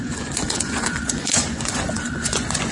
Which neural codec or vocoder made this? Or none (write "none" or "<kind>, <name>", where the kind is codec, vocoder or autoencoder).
vocoder, Vocos